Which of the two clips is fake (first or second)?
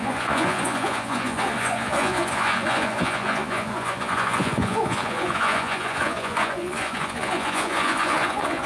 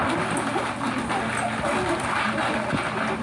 first